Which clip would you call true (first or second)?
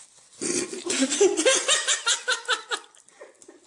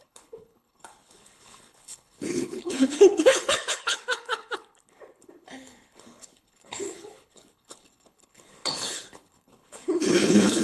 first